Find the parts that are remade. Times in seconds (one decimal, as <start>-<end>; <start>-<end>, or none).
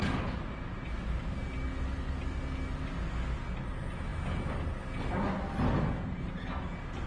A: none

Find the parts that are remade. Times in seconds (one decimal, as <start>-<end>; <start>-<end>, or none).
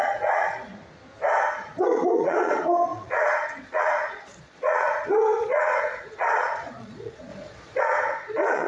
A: 0.0-0.7; 1.7-8.7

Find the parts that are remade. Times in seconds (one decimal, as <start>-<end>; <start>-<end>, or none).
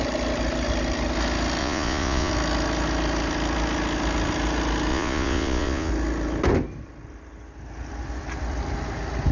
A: 1.6-2.3; 4.9-5.9